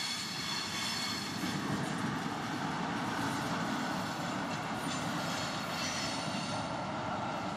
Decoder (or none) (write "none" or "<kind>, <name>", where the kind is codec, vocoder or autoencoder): none